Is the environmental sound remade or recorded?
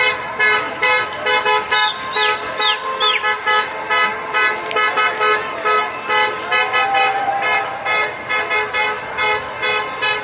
recorded